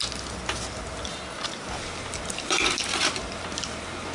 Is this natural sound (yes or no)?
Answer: yes